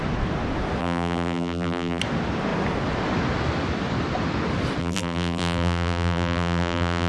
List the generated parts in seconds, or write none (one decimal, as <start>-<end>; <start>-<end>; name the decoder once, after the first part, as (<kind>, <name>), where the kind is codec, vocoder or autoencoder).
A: 0.8-2.0 (vocoder, BigVGAN v2); 4.8-7.1